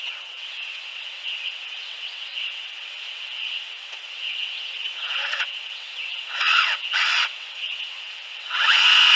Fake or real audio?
fake